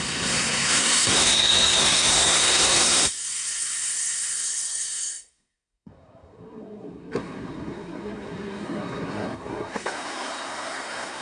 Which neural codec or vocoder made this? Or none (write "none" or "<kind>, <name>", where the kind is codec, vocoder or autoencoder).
codec, SNAC